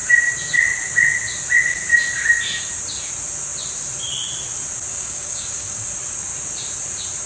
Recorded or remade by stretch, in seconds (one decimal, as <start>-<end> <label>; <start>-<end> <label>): 0.0-4.9 recorded; 4.9-5.9 remade; 5.9-7.3 recorded